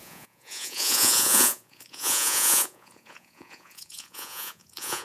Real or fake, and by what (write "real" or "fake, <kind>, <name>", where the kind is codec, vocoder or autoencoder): fake, vocoder, Vocos